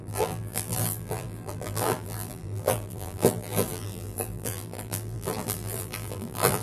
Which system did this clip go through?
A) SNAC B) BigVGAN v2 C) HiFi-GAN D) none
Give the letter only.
B